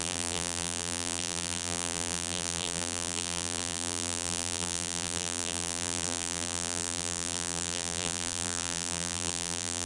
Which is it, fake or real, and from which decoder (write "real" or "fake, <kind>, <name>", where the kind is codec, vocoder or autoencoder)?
fake, vocoder, BigVGAN v2